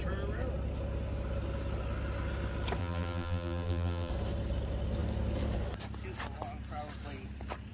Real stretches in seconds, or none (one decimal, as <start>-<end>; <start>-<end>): 0.0-2.8; 4.1-7.7